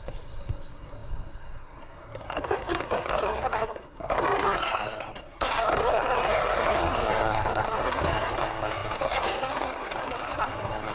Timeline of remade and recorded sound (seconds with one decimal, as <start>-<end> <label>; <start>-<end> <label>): 0.0-10.9 remade